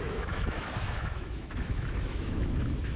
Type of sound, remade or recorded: remade